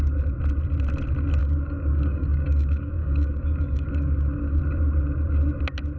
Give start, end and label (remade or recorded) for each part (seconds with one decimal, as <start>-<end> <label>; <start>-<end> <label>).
0.0-1.4 recorded; 1.4-4.6 remade; 4.6-6.0 recorded